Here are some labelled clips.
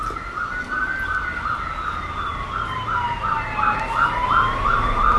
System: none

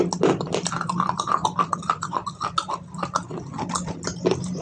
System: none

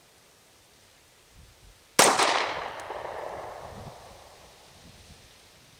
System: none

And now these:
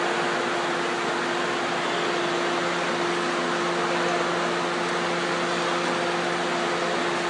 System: none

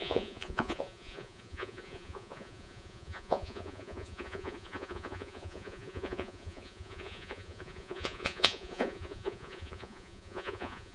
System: vocoder, Vocos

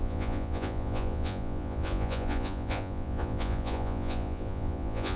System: vocoder, Vocos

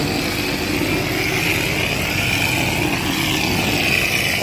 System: none